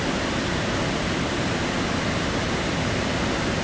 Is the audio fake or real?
real